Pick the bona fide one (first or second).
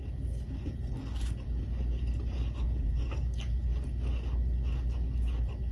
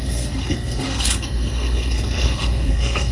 first